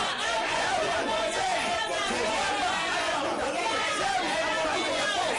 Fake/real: fake